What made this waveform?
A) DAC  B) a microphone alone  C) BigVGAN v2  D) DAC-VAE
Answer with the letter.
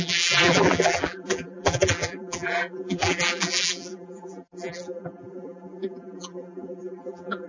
C